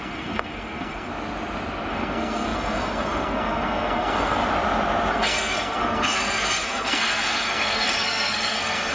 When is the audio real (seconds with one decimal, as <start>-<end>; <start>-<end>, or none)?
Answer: 1.1-1.9; 4.4-5.1